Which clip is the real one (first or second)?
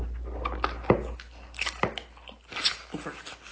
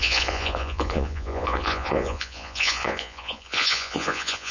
first